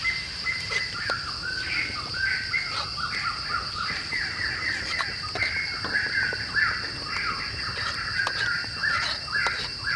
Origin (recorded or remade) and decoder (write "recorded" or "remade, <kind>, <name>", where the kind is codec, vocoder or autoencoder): recorded